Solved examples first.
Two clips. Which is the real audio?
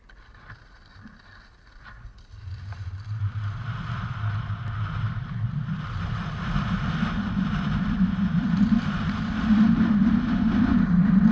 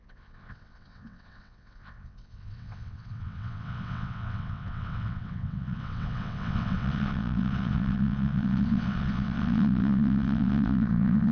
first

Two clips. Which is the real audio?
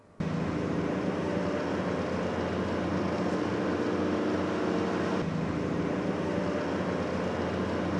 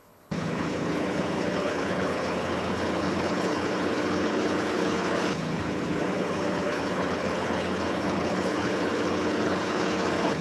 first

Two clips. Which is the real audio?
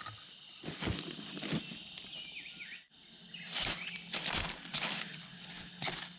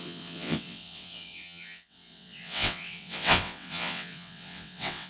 first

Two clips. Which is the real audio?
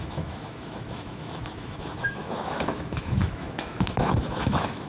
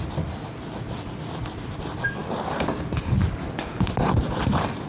second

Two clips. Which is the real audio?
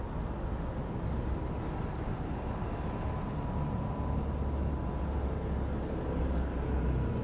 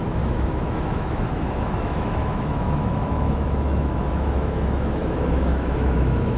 first